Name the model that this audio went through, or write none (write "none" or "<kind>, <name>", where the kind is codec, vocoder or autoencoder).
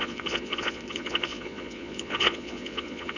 vocoder, Vocos